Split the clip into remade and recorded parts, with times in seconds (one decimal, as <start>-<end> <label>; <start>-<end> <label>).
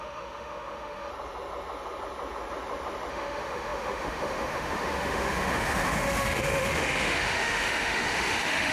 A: 0.0-1.1 remade; 1.1-3.1 recorded; 3.1-8.7 remade